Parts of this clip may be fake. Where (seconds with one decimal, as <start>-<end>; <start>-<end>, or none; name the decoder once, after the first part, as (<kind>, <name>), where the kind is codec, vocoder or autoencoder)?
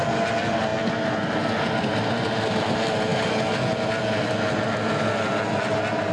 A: none